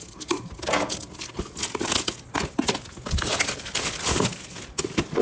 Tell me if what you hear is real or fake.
real